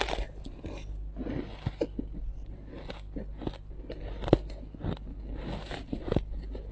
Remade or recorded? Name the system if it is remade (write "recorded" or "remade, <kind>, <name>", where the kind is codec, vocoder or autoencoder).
recorded